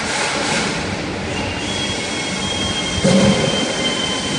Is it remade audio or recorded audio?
recorded